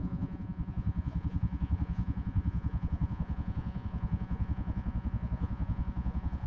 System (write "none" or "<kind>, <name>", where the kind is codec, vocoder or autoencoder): vocoder, Vocos